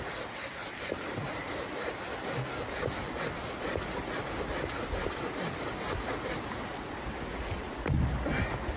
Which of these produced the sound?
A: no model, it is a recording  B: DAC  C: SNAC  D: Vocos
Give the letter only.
A